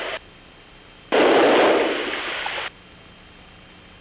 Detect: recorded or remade recorded